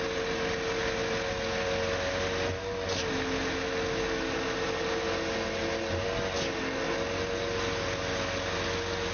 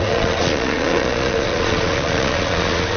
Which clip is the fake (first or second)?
second